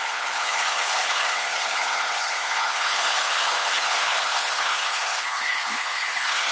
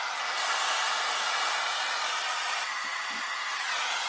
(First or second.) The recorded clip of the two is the second